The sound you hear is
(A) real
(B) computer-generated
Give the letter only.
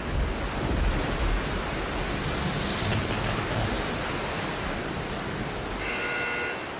A